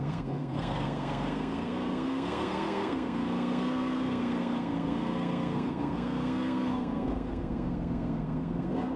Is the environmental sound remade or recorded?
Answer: remade